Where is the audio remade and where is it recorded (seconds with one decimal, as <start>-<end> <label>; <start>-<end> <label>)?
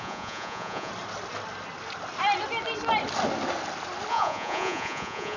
0.0-0.9 remade; 0.9-4.1 recorded; 4.1-5.4 remade